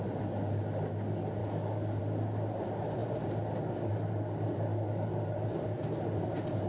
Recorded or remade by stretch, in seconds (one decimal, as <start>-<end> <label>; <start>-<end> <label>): 0.0-1.4 recorded; 1.4-2.0 remade; 2.0-4.7 recorded; 4.7-5.2 remade; 5.2-6.7 recorded